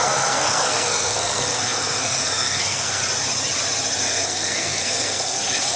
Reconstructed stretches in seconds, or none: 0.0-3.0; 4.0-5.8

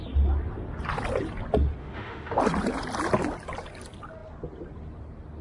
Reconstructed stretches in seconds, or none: 1.8-2.4

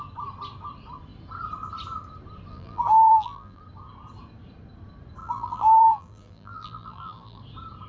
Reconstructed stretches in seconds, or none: 2.5-3.6; 5.2-7.4

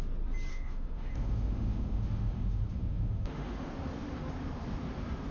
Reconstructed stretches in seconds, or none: 0.5-3.7

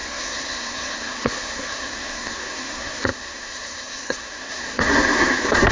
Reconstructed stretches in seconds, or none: 0.0-5.7

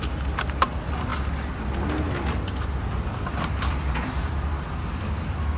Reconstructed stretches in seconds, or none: none